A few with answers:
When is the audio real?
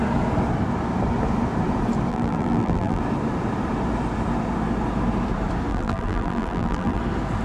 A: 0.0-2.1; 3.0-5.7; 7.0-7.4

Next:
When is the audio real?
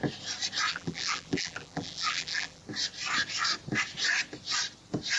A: 0.0-0.7; 2.6-5.2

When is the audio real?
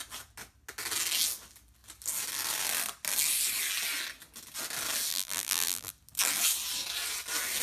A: 0.0-5.1; 5.9-7.6